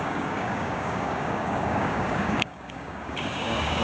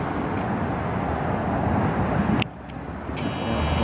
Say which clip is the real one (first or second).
second